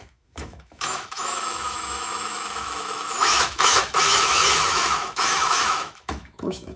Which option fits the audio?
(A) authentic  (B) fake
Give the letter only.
B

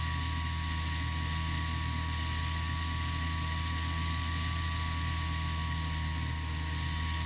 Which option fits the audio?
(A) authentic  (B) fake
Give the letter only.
A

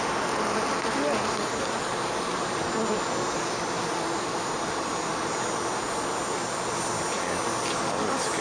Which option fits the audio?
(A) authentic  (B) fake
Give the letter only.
A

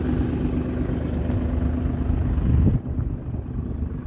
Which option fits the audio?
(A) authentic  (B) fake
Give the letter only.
A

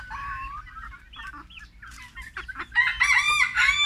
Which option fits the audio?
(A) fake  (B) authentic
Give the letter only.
B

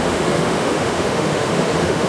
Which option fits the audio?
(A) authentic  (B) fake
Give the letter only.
B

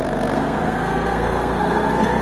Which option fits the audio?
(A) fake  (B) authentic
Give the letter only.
A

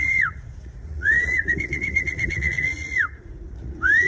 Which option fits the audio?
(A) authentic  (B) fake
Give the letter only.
B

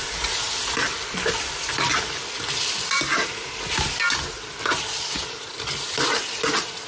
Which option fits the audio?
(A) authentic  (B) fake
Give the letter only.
A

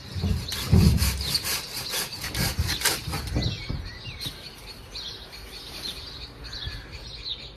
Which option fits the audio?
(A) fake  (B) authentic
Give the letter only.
B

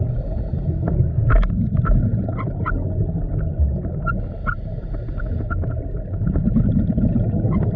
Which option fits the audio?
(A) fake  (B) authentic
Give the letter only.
B